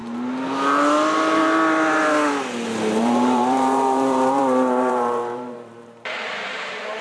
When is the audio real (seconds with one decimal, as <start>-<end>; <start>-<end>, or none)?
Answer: 0.0-3.0